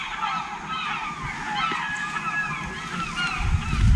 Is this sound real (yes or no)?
yes